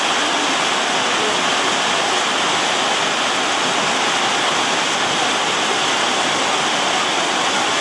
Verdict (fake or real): real